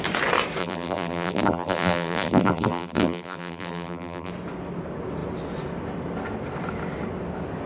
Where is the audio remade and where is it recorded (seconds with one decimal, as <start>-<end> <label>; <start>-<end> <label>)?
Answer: 0.0-0.6 recorded; 0.6-4.3 remade; 4.3-7.7 recorded